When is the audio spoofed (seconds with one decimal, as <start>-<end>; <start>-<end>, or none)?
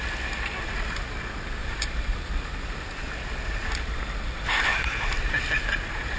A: 1.6-2.3; 4.7-5.7